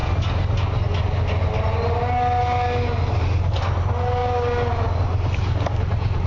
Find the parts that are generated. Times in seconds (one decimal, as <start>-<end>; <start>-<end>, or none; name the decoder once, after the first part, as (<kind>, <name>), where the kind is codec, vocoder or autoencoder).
none